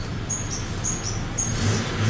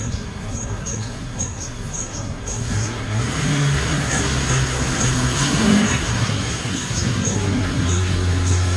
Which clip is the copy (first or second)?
second